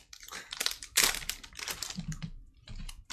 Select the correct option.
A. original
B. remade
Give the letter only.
B